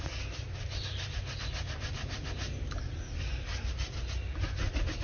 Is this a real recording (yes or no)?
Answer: yes